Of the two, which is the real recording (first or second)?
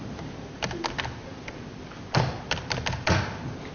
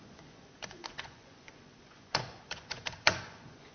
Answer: first